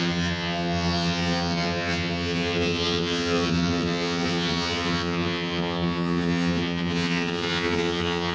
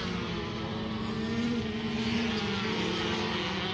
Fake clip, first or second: first